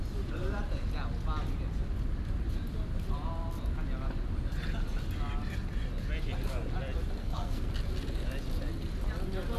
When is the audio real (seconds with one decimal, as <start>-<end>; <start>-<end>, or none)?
0.0-7.2; 7.7-9.6